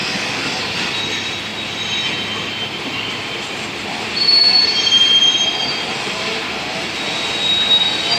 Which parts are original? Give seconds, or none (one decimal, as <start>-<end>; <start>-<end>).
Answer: 0.6-8.2